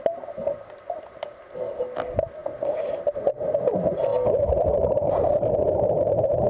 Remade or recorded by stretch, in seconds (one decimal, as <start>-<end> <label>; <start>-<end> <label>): 0.0-6.5 recorded